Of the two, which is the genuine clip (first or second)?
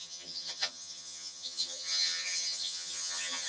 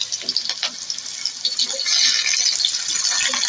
second